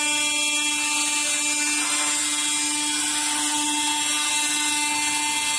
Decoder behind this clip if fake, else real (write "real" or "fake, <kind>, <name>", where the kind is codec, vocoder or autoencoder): real